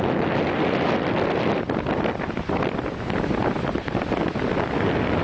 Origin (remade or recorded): recorded